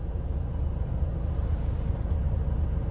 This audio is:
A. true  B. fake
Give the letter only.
A